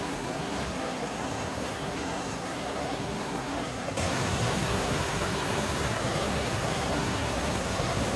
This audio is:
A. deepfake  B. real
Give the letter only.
A